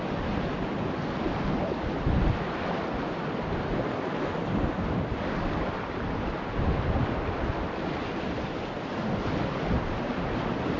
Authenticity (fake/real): real